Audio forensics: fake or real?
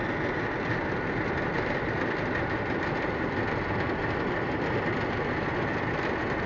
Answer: real